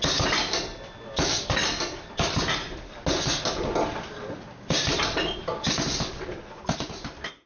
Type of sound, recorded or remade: recorded